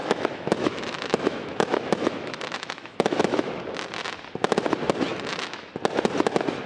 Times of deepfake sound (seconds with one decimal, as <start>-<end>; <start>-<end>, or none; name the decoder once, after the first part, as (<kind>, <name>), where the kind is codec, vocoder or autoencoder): 0.0-3.5 (autoencoder, DAC-VAE); 5.1-5.7